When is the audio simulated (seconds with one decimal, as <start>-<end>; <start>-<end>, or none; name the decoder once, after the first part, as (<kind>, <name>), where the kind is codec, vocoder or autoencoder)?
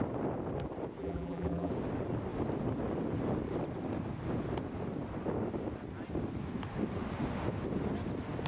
1.0-1.7 (vocoder, BigVGAN v2)